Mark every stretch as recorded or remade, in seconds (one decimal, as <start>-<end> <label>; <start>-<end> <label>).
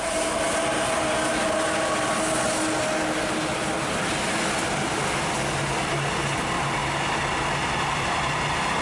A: 0.0-8.8 recorded